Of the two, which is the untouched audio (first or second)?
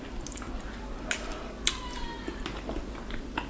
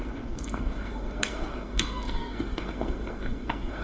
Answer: first